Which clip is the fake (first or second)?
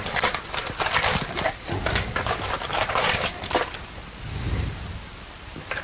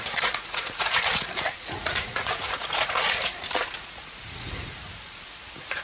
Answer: second